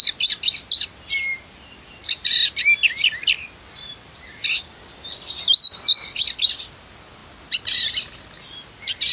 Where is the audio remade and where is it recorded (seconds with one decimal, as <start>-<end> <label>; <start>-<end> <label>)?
0.0-9.1 recorded